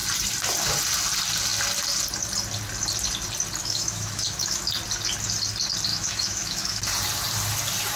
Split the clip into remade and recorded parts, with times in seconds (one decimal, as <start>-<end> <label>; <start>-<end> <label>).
0.0-3.6 recorded; 3.6-4.6 remade; 4.6-5.9 recorded; 5.9-6.8 remade; 6.8-8.0 recorded